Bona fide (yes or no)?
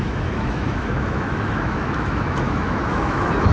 no